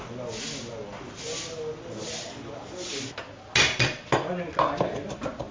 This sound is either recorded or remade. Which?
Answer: recorded